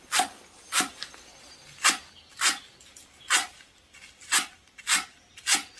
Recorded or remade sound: recorded